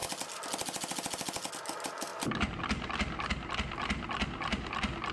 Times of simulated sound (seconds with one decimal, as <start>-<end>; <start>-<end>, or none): none